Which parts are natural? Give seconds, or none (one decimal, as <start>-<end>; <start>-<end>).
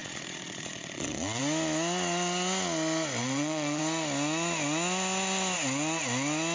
1.4-3.2; 3.8-6.5